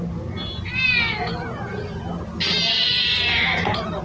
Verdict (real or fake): real